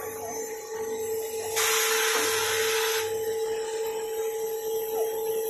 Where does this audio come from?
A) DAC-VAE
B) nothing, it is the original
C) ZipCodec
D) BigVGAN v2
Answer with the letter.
B